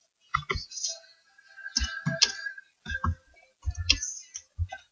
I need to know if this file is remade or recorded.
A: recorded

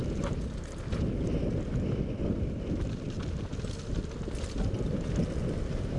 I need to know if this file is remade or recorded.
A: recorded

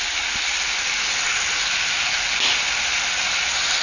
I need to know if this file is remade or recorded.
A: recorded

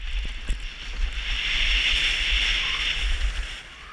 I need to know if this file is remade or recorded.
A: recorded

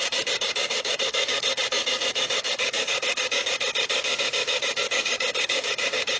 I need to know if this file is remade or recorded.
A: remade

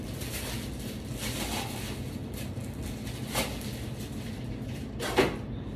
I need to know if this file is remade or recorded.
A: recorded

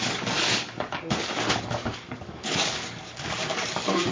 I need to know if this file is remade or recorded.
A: remade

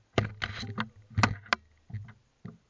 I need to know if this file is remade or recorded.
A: recorded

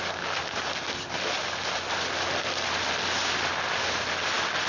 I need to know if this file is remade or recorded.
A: recorded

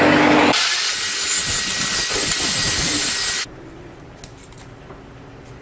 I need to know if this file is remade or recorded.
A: recorded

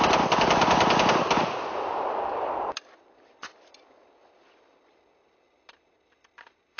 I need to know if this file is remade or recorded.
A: recorded